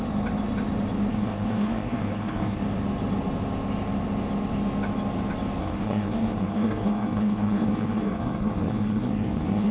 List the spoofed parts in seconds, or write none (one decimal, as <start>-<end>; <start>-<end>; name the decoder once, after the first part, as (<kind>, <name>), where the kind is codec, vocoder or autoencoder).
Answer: 1.1-2.6 (codec, SNAC); 5.6-9.7